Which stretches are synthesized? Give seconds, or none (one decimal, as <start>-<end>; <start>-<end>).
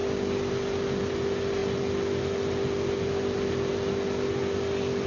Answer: none